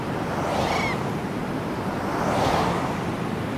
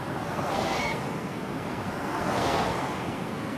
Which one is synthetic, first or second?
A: second